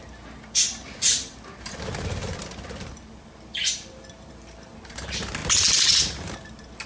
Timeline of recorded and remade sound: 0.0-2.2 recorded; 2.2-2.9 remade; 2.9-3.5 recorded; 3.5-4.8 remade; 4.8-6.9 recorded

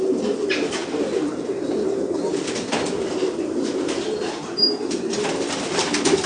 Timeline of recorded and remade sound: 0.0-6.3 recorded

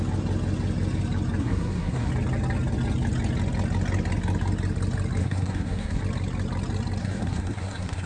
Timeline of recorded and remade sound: 0.0-1.4 recorded; 1.4-2.1 remade; 2.1-5.2 recorded; 5.2-6.0 remade; 6.0-7.0 recorded; 7.0-8.1 remade

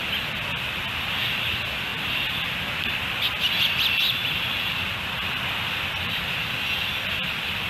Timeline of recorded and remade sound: 0.0-0.8 remade; 0.8-1.9 recorded; 1.9-6.5 remade; 6.5-7.7 recorded